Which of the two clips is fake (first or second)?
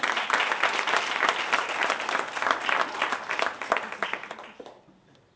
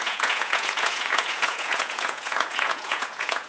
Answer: second